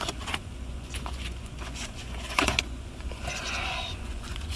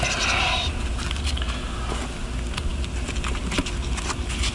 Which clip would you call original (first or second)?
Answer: second